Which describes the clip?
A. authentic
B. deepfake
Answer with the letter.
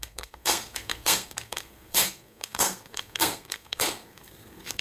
B